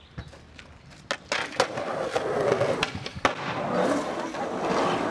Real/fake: real